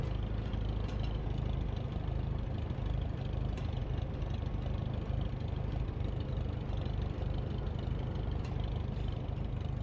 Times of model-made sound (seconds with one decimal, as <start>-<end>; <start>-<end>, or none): none